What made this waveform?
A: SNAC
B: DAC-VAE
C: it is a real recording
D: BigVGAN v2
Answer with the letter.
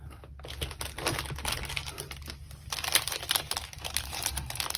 C